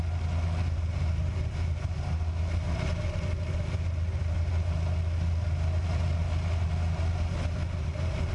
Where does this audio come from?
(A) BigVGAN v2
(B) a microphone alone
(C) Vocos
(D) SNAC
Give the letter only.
B